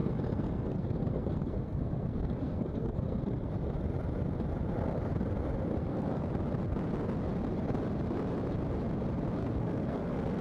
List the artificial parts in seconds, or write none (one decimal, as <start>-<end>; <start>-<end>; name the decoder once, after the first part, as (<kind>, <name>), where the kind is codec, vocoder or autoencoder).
0.0-3.5 (codec, SNAC); 5.8-6.3; 9.4-10.4